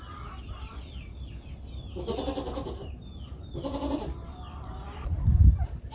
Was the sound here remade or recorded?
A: recorded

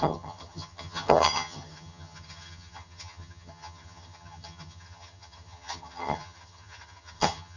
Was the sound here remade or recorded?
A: remade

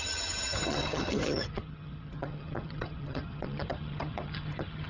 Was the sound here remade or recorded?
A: remade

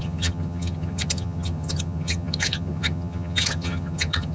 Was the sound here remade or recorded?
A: remade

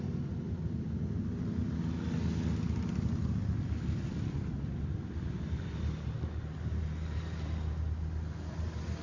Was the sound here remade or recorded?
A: recorded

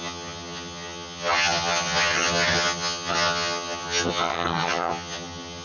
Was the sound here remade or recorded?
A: remade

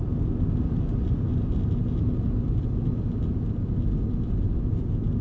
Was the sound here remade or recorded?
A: recorded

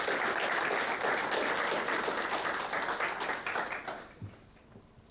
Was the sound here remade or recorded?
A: recorded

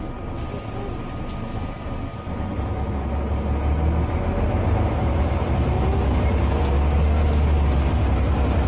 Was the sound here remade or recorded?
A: recorded